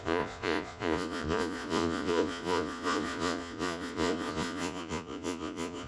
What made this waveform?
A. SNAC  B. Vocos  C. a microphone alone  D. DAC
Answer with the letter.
B